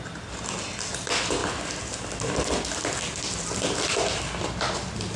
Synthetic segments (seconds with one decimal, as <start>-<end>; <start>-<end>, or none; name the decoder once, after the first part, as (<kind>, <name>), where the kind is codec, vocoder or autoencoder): none